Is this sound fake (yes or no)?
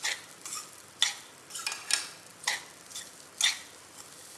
no